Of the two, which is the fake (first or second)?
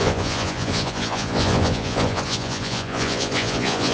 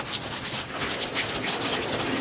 first